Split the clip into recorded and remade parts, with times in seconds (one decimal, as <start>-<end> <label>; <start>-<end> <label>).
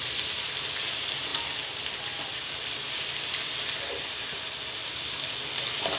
0.0-6.0 recorded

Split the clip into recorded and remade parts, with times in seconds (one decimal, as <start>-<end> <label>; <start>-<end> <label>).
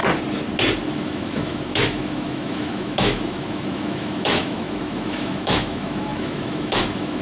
0.0-0.9 recorded; 0.9-7.2 remade